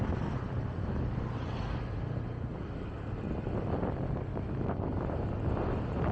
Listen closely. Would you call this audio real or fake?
real